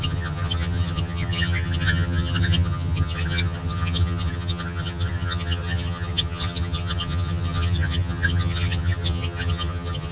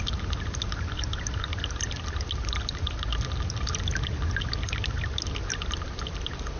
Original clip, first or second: second